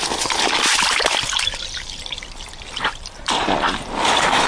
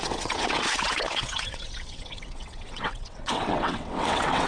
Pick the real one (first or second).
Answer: first